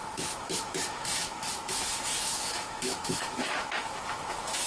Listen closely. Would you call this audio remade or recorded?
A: remade